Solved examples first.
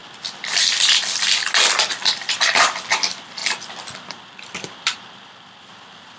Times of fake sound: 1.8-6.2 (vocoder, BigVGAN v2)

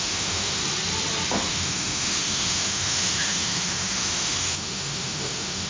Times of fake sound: 0.0-0.6 (autoencoder, DAC-VAE); 1.5-5.7

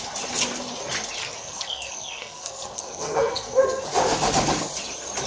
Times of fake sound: 1.2-3.8 (codec, SNAC)

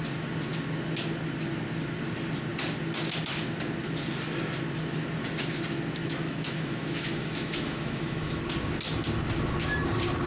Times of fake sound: 6.0-8.4 (autoencoder, DAC-VAE)

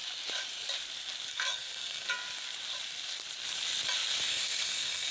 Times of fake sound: 1.3-2.1 (codec, SNAC); 4.3-5.1

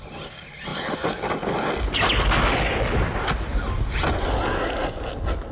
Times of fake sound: none